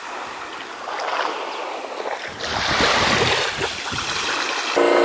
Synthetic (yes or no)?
no